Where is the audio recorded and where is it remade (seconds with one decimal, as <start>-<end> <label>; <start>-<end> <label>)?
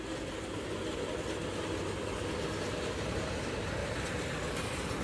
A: 0.0-5.0 recorded